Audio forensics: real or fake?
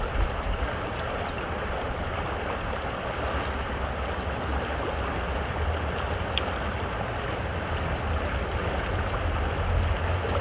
real